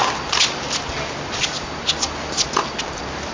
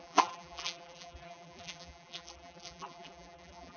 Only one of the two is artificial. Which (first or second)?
second